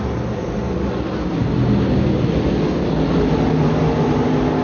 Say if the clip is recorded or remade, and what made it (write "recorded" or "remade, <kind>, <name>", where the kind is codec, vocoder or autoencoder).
recorded